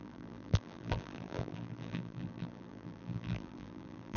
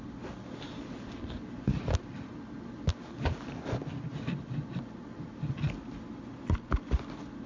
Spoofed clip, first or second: first